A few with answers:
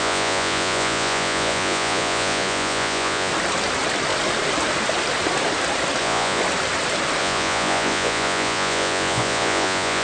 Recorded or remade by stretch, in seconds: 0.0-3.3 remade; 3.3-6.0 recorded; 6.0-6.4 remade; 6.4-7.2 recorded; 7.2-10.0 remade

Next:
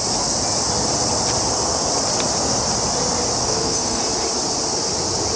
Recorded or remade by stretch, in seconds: 0.0-3.4 recorded; 3.4-4.0 remade; 4.0-5.4 recorded

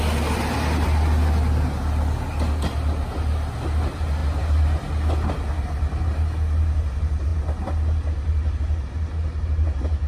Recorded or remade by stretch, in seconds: 0.0-10.1 recorded

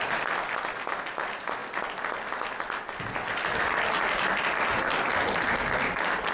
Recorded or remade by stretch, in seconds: 0.0-6.3 recorded

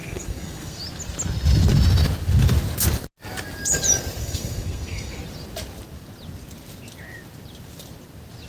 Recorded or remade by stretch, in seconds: 0.0-0.8 remade; 0.8-4.2 recorded; 4.2-5.2 remade; 5.2-8.5 recorded

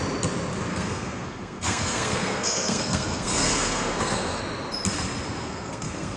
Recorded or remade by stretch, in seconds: 0.0-0.7 recorded; 0.7-4.4 remade; 4.4-5.4 recorded; 5.4-6.2 remade

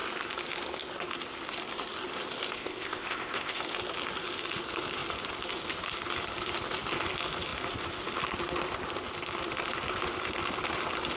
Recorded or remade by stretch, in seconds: 0.0-2.6 recorded; 2.6-3.6 remade; 3.6-11.2 recorded

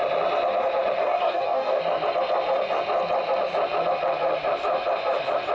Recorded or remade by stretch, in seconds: 0.0-1.0 recorded; 1.0-1.8 remade; 1.8-5.5 recorded